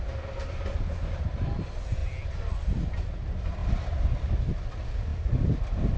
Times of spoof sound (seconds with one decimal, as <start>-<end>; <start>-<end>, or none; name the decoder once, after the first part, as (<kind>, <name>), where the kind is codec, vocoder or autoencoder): none